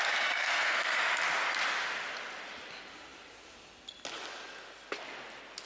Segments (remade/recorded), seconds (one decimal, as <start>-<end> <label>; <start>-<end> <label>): 0.0-0.4 recorded; 0.4-1.0 remade; 1.0-5.7 recorded